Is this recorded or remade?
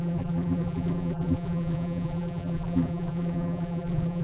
remade